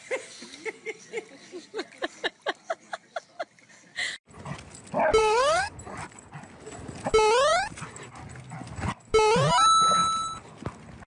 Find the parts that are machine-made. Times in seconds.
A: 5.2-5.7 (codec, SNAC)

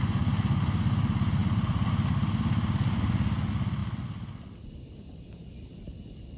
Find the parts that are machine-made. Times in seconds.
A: none

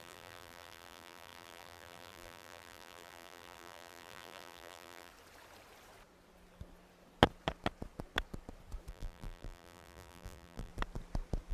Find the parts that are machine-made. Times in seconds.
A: 0.0-5.1 (vocoder, BigVGAN v2); 8.9-10.7

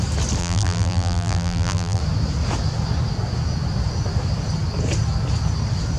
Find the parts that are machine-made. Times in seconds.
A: 0.4-2.0 (vocoder, BigVGAN v2)

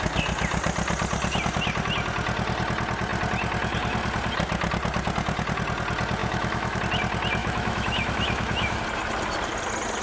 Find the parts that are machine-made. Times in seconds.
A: 6.2-6.8 (autoencoder, DAC-VAE); 7.4-8.8